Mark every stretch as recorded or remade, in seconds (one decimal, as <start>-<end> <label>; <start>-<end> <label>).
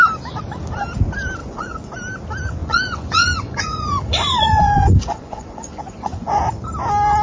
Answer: 0.0-1.4 recorded; 1.4-1.9 remade; 1.9-2.6 recorded; 2.6-6.4 remade; 6.4-7.2 recorded